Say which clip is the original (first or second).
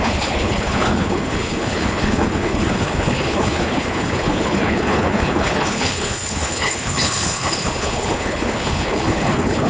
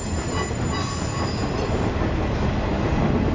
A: second